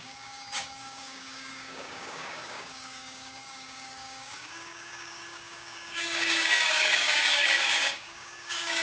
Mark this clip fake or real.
fake